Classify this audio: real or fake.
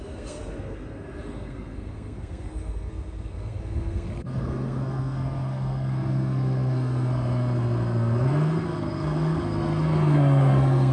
fake